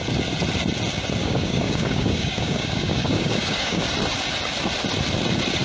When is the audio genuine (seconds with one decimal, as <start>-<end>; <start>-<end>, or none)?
0.0-1.2; 3.8-5.6